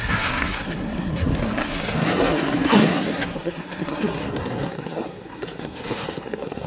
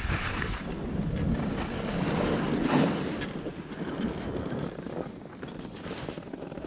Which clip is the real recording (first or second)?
second